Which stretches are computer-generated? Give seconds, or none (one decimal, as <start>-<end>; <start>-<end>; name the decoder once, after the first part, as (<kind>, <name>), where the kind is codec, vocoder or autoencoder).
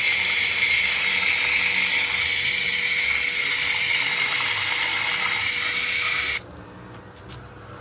none